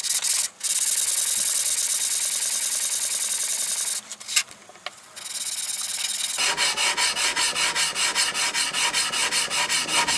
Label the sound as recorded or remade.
recorded